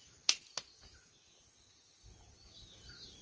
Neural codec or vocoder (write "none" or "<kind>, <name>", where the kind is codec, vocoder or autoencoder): none